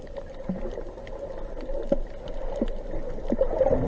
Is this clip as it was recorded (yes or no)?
yes